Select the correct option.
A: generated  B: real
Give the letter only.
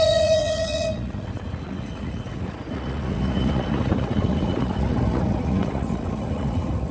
A